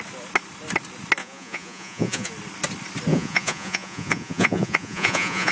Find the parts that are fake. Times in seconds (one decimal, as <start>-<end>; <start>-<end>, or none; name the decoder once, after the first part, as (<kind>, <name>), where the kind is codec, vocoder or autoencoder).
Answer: 1.2-2.3 (vocoder, Vocos); 3.1-5.5